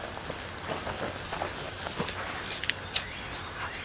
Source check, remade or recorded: recorded